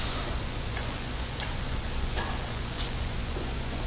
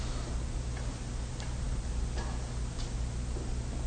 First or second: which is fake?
first